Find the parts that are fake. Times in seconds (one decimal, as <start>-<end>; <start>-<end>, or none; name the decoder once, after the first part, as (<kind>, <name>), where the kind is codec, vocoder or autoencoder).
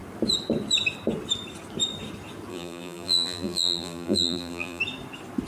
2.5-4.8 (vocoder, BigVGAN v2)